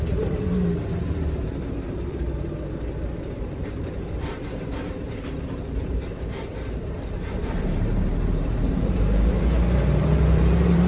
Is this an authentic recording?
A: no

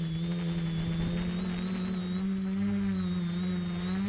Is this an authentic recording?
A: yes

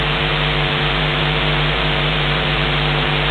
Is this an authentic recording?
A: no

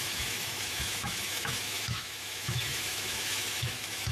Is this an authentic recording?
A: no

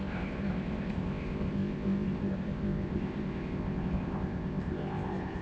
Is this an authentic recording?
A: no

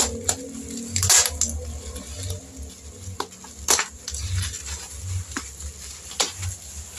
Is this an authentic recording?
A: yes